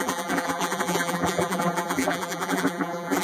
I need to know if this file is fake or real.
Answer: fake